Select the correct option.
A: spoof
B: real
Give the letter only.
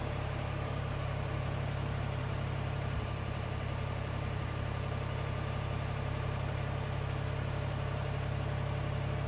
A